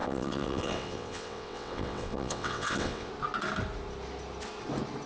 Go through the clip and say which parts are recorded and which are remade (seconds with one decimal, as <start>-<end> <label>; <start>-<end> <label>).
0.0-3.1 remade; 3.1-5.1 recorded